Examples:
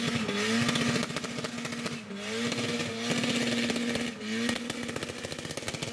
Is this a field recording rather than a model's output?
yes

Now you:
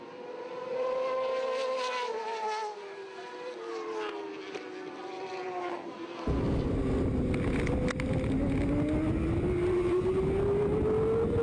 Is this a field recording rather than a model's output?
yes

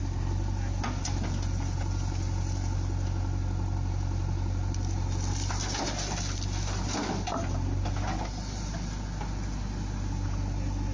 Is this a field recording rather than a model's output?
yes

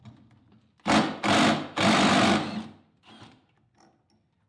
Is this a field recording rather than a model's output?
yes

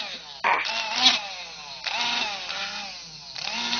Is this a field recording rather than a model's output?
yes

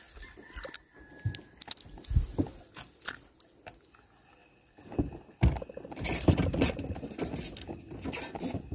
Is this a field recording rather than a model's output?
yes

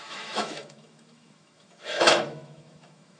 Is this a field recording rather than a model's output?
no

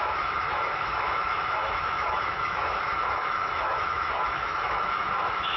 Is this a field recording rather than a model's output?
no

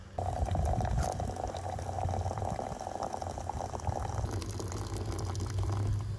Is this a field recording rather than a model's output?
yes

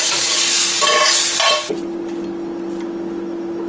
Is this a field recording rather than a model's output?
yes